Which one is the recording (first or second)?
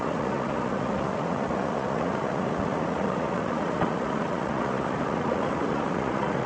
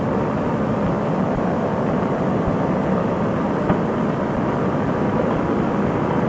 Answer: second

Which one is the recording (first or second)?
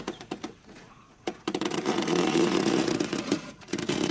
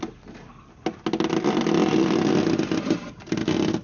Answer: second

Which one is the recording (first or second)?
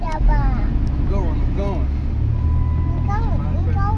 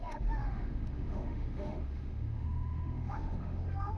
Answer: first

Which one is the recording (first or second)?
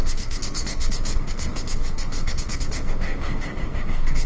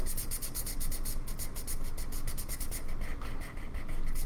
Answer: second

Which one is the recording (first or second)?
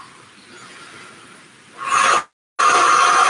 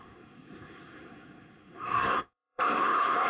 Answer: first